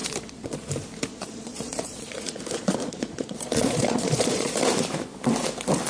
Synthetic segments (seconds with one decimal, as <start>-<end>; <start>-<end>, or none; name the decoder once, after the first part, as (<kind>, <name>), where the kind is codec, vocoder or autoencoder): 0.0-0.7 (vocoder, Vocos); 1.1-4.6